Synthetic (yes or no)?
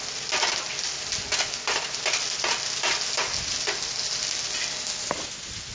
no